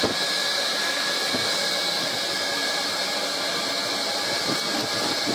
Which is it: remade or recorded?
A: recorded